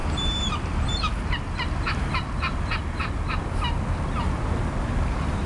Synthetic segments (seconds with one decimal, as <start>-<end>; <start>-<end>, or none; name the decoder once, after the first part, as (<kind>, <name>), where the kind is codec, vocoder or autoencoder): none